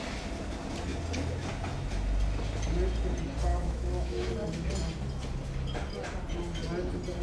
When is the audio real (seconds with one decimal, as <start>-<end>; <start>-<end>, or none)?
0.0-3.5; 4.3-7.2